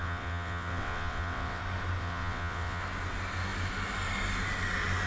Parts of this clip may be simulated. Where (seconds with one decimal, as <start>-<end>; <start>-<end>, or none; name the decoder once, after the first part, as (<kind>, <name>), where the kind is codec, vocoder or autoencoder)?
0.0-1.6 (vocoder, WaveNeXt); 2.0-2.8